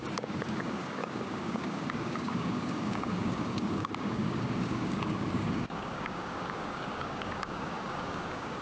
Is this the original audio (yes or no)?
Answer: no